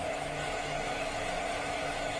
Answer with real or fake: fake